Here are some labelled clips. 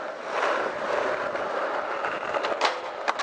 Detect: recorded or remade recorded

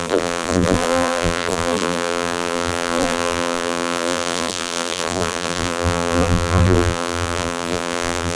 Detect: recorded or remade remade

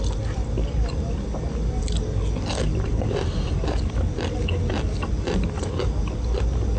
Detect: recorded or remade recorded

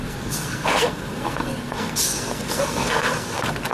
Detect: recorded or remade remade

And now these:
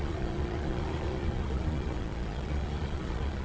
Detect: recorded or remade remade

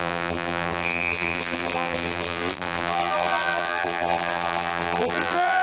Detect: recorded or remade remade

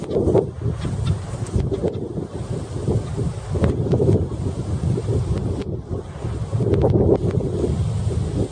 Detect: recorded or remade recorded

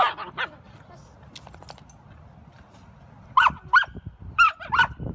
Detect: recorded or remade recorded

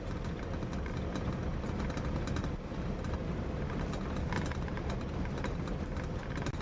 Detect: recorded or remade recorded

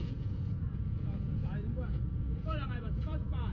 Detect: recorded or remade remade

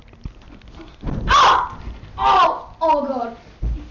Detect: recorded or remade recorded